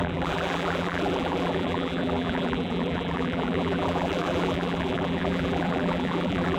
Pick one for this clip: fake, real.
fake